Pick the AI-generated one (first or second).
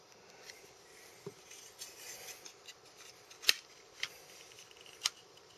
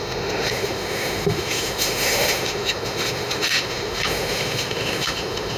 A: second